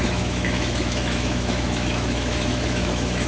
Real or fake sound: fake